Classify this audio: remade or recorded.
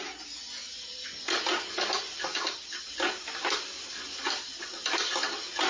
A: recorded